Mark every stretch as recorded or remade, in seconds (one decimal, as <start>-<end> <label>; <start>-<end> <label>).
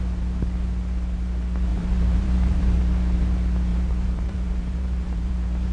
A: 0.0-1.7 recorded; 1.7-2.8 remade; 2.8-3.7 recorded; 3.7-5.3 remade; 5.3-5.7 recorded